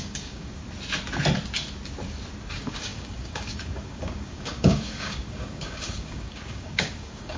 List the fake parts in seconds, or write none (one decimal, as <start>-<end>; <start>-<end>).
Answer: 0.0-0.6; 2.5-7.4